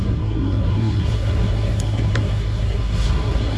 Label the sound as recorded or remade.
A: remade